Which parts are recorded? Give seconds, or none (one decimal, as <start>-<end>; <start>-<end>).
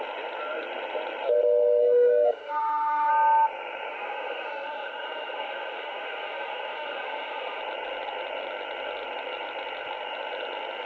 0.0-1.8; 3.1-3.9; 7.6-10.9